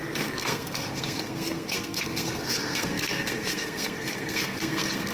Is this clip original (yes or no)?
no